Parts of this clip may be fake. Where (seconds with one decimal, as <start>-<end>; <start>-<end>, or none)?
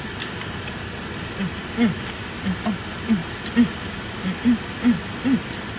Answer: none